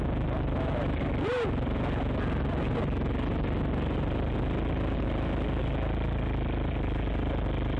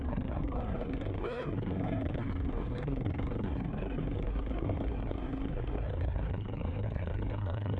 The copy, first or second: second